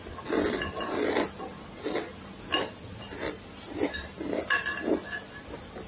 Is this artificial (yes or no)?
no